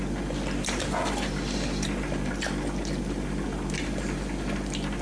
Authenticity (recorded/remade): recorded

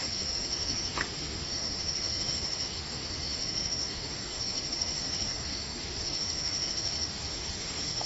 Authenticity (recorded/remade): remade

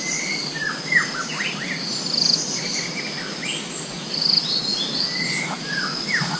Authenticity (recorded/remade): recorded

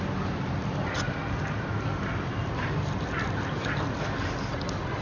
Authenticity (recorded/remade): recorded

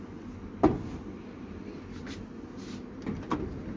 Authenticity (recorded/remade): recorded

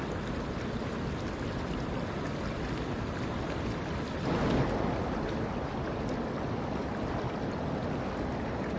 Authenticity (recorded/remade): recorded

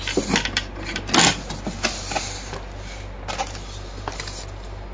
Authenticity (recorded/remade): recorded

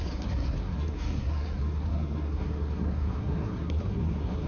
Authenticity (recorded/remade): remade